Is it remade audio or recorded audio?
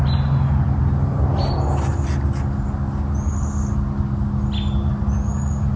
recorded